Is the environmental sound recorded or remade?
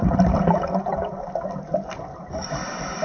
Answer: recorded